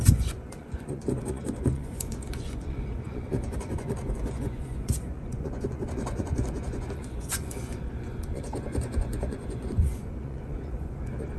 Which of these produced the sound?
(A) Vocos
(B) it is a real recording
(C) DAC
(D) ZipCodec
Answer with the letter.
A